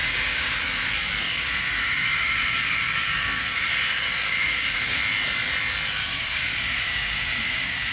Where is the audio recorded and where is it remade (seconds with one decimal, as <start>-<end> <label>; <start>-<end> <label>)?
0.0-0.6 remade; 0.6-1.3 recorded; 1.3-5.0 remade; 5.0-6.0 recorded; 6.0-7.9 remade